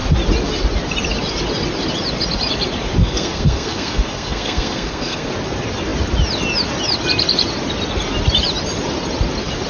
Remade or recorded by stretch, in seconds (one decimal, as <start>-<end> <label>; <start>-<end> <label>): 0.0-3.0 recorded; 3.0-5.3 remade; 5.3-9.7 recorded